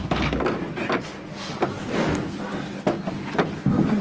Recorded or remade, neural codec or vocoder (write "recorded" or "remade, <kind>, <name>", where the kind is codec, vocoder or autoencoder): recorded